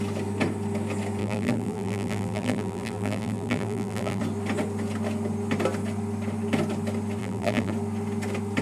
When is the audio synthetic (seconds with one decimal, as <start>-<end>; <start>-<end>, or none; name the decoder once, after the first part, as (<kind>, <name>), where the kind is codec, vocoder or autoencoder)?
1.2-4.2 (vocoder, BigVGAN v2); 7.2-7.7